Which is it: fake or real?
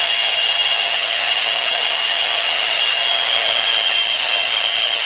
fake